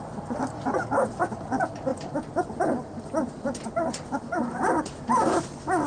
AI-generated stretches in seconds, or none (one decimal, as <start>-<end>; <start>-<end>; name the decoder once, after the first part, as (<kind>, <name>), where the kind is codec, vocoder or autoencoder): none